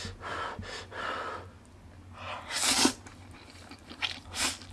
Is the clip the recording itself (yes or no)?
yes